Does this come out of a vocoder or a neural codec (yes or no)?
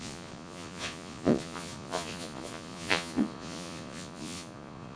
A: yes